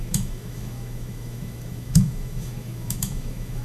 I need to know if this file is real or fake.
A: fake